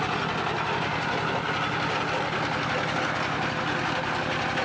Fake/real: real